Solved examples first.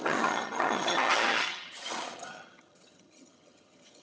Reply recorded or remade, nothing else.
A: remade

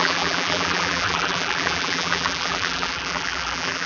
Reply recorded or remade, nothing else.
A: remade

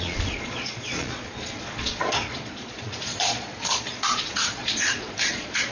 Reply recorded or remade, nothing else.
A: remade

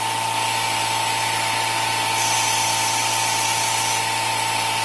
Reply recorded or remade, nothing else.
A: recorded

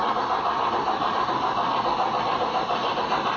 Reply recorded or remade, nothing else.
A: recorded